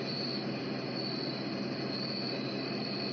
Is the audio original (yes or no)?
yes